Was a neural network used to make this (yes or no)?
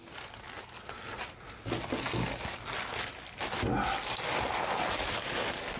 no